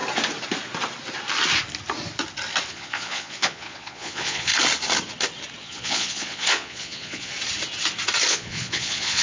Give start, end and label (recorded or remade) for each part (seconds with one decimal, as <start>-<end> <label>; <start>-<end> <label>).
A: 0.0-2.7 recorded; 2.7-4.5 remade; 4.5-5.6 recorded; 5.6-7.3 remade; 7.3-8.3 recorded; 8.3-9.2 remade

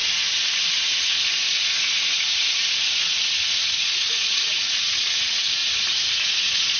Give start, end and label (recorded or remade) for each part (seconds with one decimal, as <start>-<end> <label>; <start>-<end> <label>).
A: 0.0-6.8 remade